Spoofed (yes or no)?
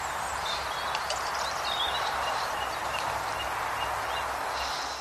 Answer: no